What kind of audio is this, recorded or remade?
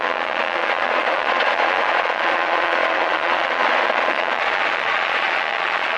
remade